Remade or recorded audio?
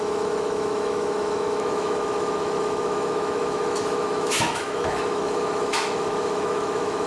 remade